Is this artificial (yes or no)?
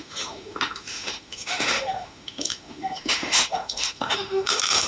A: yes